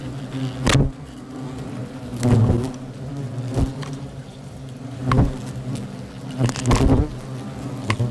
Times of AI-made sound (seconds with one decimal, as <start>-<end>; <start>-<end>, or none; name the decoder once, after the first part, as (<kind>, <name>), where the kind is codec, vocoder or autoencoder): 3.7-5.0 (vocoder, BigVGAN v2)